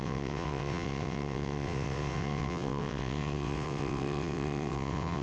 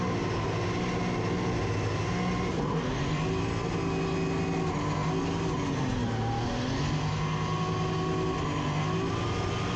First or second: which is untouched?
second